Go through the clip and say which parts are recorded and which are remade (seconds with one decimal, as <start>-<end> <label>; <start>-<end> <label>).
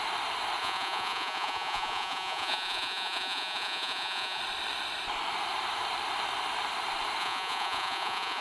0.0-0.6 recorded; 0.6-4.4 remade; 4.4-7.2 recorded; 7.2-8.4 remade